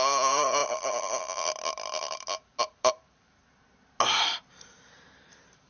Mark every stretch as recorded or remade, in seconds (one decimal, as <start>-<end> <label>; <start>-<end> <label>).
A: 0.0-3.4 remade; 3.4-4.5 recorded; 4.5-5.7 remade

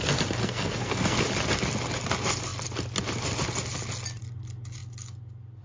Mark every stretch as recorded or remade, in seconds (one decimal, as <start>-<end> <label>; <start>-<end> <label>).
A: 0.0-0.4 recorded; 0.4-1.2 remade; 1.2-5.6 recorded